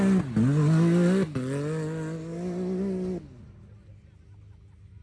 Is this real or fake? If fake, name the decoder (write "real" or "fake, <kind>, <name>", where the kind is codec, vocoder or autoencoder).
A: real